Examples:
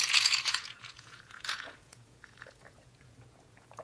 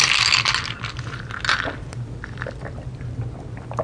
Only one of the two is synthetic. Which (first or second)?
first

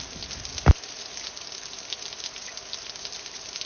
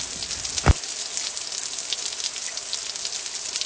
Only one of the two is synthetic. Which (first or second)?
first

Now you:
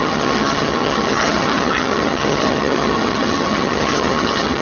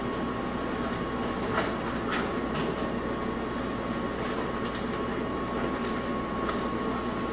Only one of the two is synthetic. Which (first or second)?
first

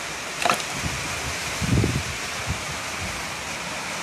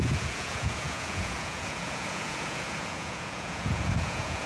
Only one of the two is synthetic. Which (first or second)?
second